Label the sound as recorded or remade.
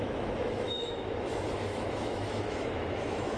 remade